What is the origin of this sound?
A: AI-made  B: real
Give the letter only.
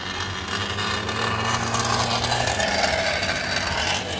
B